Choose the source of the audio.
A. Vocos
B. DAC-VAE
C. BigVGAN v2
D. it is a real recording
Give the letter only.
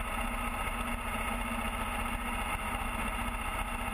D